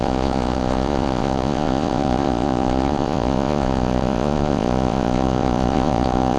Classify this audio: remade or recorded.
remade